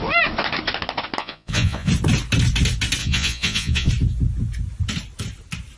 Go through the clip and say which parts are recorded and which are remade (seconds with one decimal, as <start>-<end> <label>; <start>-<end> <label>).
0.0-1.2 recorded; 1.2-1.9 remade; 1.9-3.0 recorded; 3.0-3.9 remade; 3.9-5.8 recorded